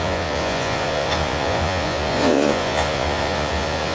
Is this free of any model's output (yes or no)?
no